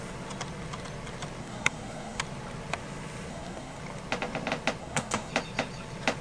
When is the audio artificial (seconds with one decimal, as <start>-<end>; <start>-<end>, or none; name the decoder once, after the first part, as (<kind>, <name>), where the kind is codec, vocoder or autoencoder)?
1.4-2.2 (codec, SNAC); 3.3-3.8; 4.8-5.3